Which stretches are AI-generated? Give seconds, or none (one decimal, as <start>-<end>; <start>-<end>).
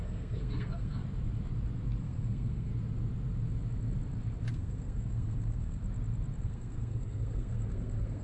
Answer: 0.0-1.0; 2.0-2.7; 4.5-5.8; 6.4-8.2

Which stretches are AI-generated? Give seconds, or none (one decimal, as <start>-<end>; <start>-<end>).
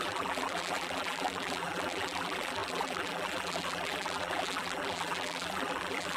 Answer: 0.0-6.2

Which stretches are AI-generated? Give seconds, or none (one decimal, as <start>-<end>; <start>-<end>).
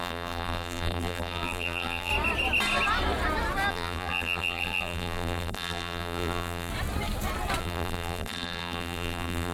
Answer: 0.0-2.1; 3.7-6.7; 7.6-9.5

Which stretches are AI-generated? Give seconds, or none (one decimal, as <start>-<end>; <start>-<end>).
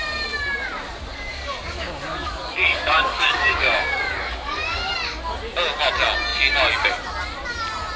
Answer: 1.1-4.9